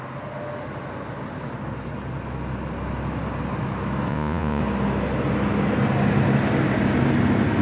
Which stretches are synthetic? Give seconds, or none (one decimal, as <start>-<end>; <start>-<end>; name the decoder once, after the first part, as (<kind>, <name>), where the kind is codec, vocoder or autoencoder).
4.1-4.6 (vocoder, Vocos)